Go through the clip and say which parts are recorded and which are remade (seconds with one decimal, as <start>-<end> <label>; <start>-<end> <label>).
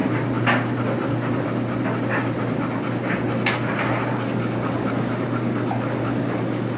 0.0-4.1 recorded; 4.1-6.8 remade